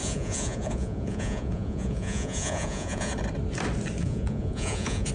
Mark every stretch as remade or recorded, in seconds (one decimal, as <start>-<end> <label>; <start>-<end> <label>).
0.0-3.1 remade; 3.1-4.0 recorded; 4.0-5.1 remade